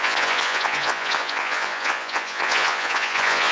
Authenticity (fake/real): fake